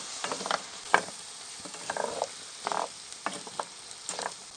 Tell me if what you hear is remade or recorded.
recorded